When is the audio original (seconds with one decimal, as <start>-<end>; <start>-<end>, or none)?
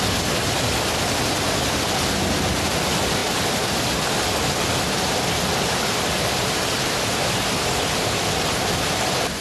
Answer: 0.0-9.4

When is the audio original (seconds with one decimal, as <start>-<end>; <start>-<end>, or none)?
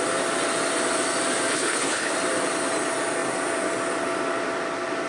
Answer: 0.0-1.5; 2.1-5.1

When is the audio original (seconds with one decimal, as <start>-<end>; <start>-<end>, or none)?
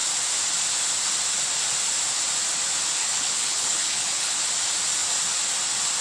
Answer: 0.0-3.0; 4.3-6.0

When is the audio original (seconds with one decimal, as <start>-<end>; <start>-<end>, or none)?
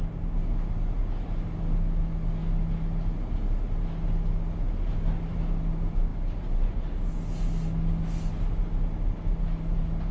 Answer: 0.0-10.1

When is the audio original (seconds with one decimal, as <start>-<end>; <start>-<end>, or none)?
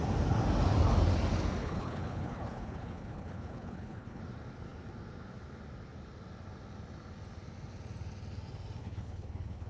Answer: 0.0-1.6; 4.2-8.8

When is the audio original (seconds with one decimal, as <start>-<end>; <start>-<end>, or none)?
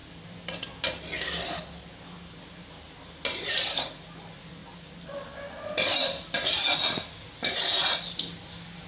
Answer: 0.0-8.9